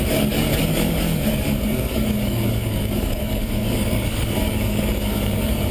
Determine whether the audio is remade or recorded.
remade